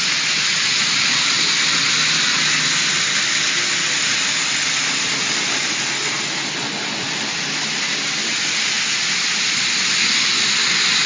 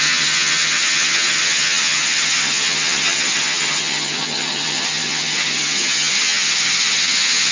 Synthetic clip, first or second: second